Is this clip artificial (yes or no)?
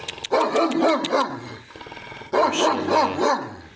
no